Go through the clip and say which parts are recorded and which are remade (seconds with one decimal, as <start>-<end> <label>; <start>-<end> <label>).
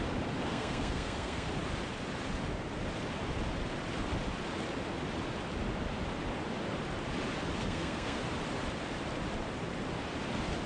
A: 0.0-0.5 recorded; 0.5-1.5 remade; 1.5-7.6 recorded; 7.6-8.2 remade; 8.2-10.7 recorded